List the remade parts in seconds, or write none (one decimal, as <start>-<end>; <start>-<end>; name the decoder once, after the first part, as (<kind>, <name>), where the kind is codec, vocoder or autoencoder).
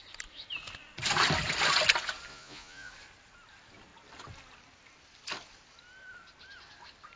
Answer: 2.3-2.9 (vocoder, Vocos)